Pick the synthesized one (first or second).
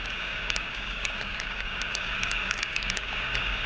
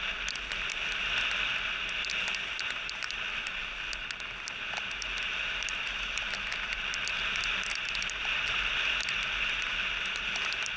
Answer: first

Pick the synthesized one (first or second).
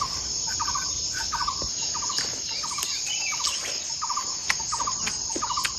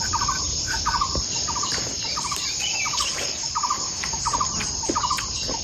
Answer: second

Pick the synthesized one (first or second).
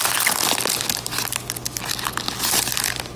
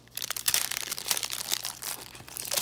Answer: second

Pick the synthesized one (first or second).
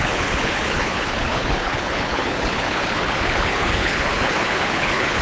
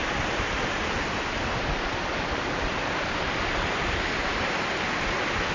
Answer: first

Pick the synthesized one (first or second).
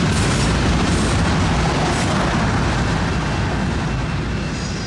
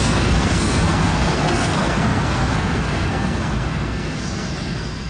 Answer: second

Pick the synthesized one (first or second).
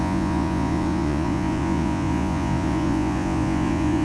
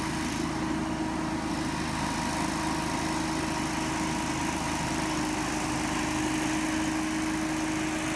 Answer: first